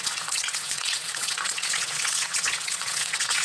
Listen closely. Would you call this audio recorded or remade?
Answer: remade